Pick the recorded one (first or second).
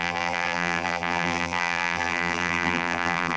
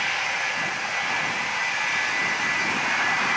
second